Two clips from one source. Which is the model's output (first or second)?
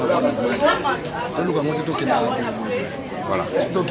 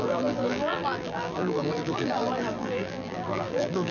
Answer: second